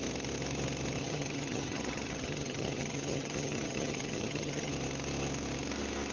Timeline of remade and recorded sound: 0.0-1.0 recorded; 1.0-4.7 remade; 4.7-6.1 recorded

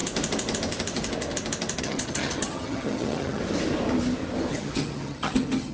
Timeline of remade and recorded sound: 0.0-1.8 recorded; 1.8-3.4 remade; 3.4-4.5 recorded; 4.5-5.7 remade

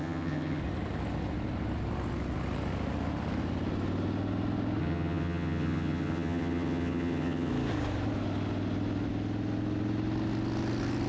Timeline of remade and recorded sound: 0.0-0.6 remade; 0.6-4.8 recorded; 4.8-7.5 remade; 7.5-11.1 recorded